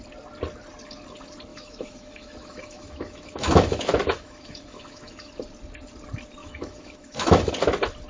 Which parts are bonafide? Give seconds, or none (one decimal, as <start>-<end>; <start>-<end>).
0.0-1.5; 5.3-6.4; 7.5-8.1